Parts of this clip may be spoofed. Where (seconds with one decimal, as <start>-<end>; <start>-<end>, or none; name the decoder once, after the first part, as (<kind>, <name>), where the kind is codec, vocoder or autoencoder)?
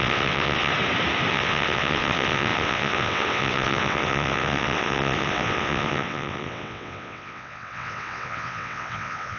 0.0-0.7 (vocoder, WaveNeXt); 1.3-9.4